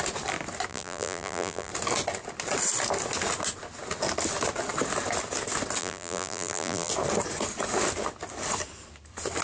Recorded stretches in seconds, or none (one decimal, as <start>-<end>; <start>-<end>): 0.0-0.7; 1.7-5.8; 6.9-9.4